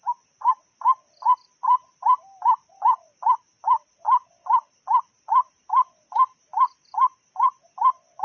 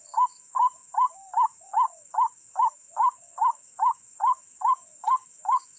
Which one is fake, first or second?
second